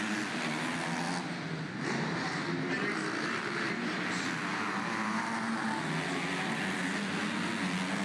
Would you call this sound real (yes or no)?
yes